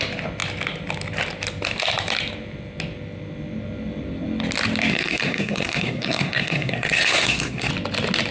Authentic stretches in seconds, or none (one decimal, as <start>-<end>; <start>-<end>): 0.0-4.9; 7.7-8.3

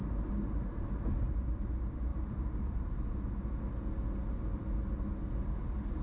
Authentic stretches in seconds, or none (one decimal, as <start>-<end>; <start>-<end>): 0.9-2.1; 2.9-6.0

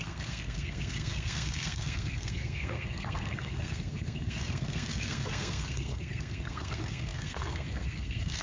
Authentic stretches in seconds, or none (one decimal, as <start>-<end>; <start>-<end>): none

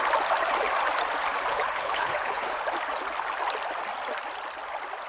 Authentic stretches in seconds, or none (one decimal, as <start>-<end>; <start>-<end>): 0.0-1.5; 2.6-5.1

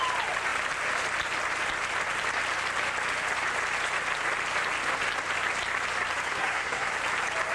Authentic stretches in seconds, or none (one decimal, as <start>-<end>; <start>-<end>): 0.0-6.3; 6.9-7.5

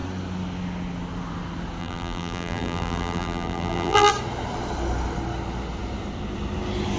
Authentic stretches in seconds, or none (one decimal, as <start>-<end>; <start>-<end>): 0.0-1.8; 4.1-7.0

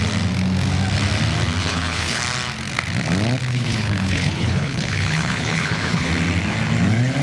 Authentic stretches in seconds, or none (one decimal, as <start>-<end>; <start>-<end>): 0.0-1.6; 2.2-3.5; 6.1-7.2

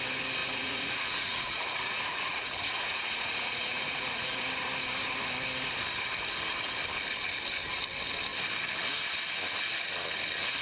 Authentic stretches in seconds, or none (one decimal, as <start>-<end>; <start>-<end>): 0.0-0.4; 4.4-10.6